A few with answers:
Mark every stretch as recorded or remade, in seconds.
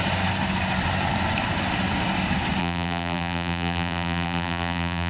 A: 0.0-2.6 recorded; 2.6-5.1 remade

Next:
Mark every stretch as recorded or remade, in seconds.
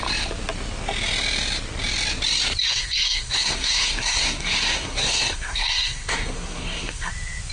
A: 0.0-2.6 recorded; 2.6-7.1 remade; 7.1-7.5 recorded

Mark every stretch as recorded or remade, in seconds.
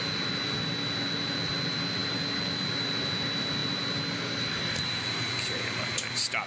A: 0.0-6.5 recorded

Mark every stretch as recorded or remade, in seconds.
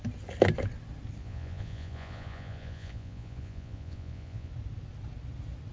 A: 0.0-1.2 recorded; 1.2-4.5 remade; 4.5-5.7 recorded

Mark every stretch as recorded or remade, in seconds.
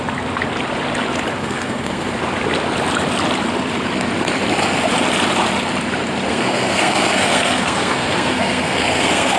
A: 0.0-1.4 recorded; 1.4-2.1 remade; 2.1-6.3 recorded; 6.3-9.4 remade